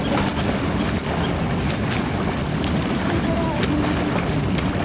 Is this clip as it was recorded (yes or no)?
yes